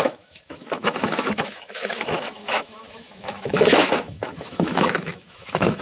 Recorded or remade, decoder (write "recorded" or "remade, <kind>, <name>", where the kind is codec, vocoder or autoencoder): remade, autoencoder, DAC-VAE